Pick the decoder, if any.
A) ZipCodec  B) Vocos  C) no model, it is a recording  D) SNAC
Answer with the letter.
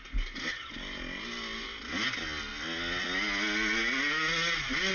C